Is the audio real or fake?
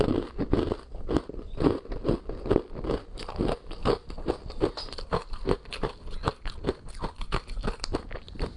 real